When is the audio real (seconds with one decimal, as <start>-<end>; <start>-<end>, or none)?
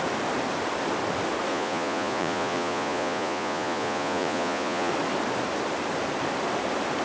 0.0-1.5; 4.9-7.0